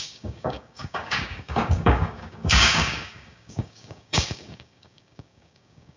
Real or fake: fake